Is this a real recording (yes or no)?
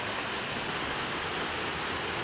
yes